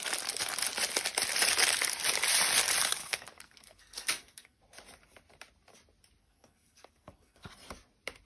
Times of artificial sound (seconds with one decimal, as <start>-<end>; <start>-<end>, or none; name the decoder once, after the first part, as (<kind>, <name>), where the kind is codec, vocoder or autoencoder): 3.0-4.6 (codec, SNAC); 6.2-7.5